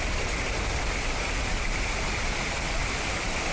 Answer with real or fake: real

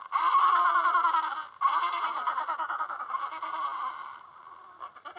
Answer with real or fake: real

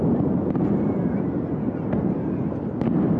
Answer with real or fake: real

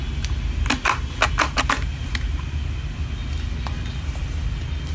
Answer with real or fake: real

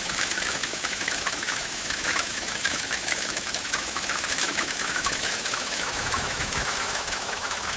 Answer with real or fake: fake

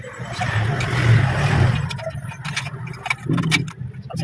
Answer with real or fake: real